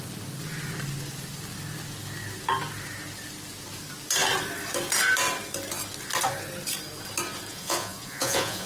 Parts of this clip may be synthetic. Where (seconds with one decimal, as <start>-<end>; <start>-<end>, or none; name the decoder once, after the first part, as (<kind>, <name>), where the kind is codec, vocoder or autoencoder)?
7.5-8.7 (vocoder, Vocos)